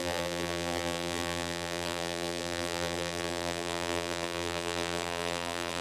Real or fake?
fake